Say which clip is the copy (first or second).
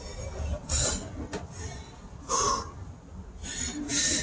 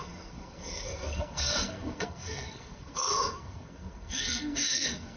second